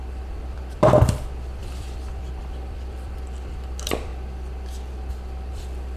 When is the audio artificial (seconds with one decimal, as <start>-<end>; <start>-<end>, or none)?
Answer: 0.0-4.1; 5.5-6.0